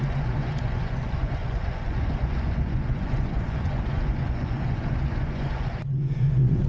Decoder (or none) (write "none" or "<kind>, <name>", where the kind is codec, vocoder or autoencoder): vocoder, Vocos